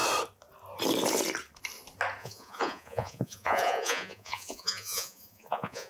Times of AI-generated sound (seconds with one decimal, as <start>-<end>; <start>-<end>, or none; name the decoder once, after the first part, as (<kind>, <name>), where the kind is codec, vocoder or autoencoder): 2.2-5.9 (vocoder, Vocos)